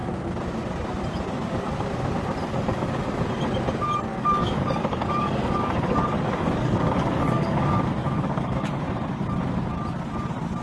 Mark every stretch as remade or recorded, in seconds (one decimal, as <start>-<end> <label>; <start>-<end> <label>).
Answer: 0.0-2.4 recorded; 2.4-3.2 remade; 3.2-4.1 recorded; 4.1-8.7 remade; 8.7-10.6 recorded